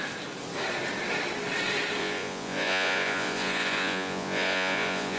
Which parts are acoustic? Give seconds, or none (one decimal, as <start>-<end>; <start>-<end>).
0.0-2.0